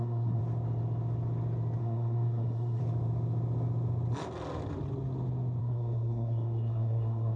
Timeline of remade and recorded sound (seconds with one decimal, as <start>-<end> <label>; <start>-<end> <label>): 0.0-0.4 remade; 0.4-1.8 recorded; 1.8-2.8 remade; 2.8-5.6 recorded; 5.6-7.4 remade